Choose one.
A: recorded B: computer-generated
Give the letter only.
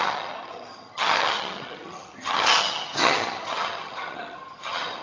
B